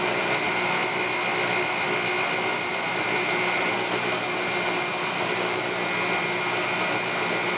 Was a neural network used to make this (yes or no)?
no